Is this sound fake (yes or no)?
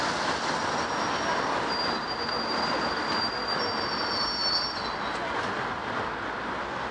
no